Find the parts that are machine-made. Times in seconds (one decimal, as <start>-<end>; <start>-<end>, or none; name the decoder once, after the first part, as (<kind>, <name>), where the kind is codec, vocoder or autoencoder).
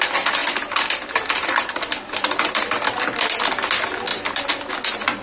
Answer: 0.4-3.5 (vocoder, BigVGAN v2); 4.1-4.7